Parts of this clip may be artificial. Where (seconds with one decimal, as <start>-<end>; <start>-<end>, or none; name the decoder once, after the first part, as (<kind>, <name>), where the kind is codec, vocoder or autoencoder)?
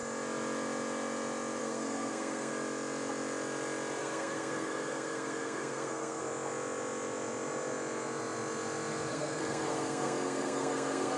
1.6-2.5 (codec, SNAC); 4.0-6.2; 9.1-11.2